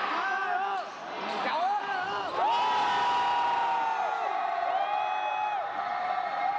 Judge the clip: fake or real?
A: real